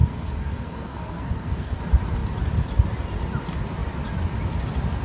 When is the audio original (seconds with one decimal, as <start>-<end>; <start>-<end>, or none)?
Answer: 1.8-5.0

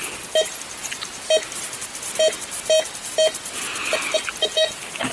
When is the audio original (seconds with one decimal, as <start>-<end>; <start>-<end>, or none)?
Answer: 0.0-5.1

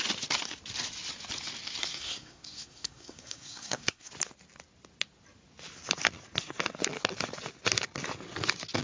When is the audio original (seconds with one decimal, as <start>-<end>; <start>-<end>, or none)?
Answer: 0.0-1.8; 4.1-8.8

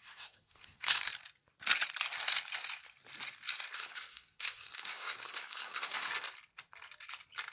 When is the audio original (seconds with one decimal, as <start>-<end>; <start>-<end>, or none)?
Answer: 1.1-3.7; 6.1-7.5

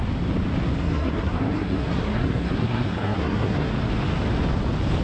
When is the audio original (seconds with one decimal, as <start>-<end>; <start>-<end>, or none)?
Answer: 0.0-0.8; 3.7-5.0